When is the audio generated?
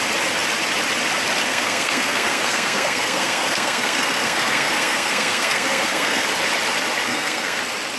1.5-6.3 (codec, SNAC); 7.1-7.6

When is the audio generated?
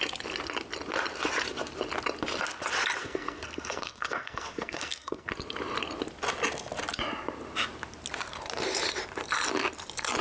3.0-5.3 (codec, SNAC)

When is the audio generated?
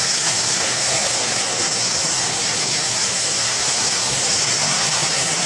0.0-5.5 (codec, SNAC)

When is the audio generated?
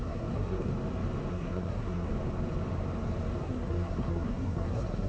0.0-0.7 (codec, SNAC); 1.3-2.1; 3.4-5.1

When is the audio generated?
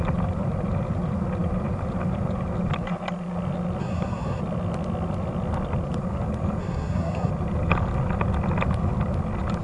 3.8-4.4 (codec, SNAC); 6.6-7.3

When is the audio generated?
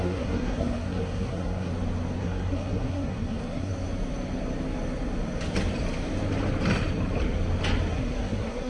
0.0-1.7 (codec, SNAC); 2.2-3.7; 7.9-8.7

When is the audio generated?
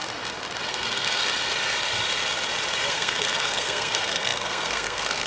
0.7-1.2 (codec, SNAC); 2.9-5.3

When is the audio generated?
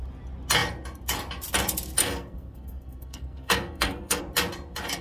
2.0-4.2 (codec, SNAC)